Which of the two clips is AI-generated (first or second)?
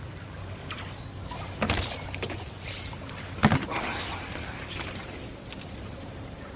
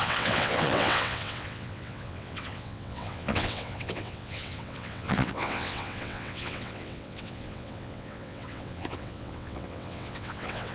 second